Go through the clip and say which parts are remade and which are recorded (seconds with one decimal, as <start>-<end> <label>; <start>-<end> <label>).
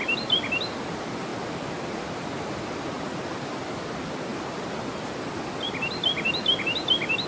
0.0-7.3 recorded